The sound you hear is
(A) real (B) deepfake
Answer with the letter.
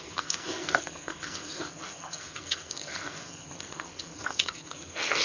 B